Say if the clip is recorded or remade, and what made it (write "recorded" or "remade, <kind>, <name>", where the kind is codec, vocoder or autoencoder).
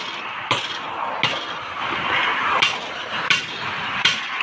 recorded